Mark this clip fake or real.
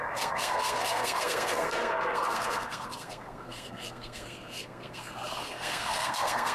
fake